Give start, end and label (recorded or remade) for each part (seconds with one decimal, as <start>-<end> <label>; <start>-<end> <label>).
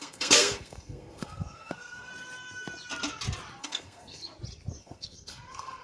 0.0-2.1 remade; 2.1-3.6 recorded; 3.6-4.2 remade; 4.2-4.8 recorded; 4.8-5.8 remade